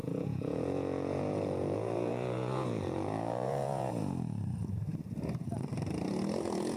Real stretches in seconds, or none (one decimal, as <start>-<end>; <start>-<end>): 3.9-6.8